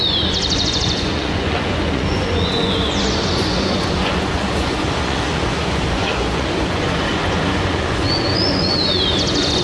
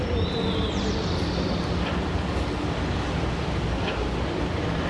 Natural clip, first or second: second